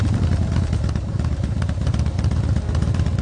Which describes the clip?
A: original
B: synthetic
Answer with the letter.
B